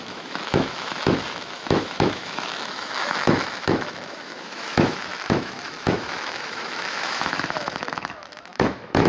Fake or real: fake